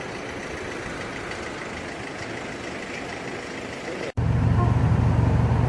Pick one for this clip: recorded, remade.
recorded